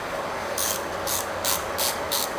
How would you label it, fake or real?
fake